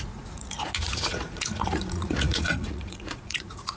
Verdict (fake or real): fake